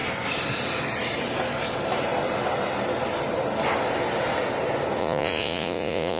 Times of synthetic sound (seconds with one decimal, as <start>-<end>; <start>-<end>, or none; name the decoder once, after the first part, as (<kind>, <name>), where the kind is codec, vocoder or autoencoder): 5.0-6.2 (vocoder, Vocos)